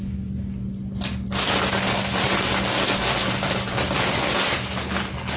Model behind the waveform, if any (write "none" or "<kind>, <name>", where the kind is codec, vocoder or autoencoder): none